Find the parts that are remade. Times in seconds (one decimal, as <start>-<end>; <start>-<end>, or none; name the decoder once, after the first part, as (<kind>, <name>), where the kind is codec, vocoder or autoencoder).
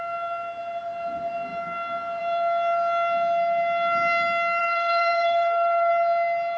4.6-5.9 (codec, SNAC)